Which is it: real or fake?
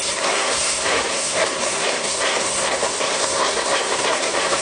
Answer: fake